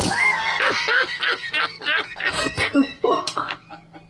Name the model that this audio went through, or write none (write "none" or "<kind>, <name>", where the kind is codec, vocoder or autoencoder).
codec, SNAC